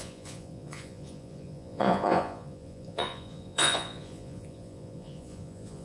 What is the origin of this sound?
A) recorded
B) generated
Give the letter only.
B